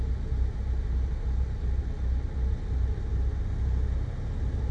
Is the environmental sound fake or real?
real